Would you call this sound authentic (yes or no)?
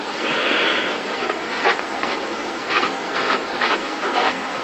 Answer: no